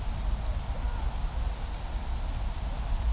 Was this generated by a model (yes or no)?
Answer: no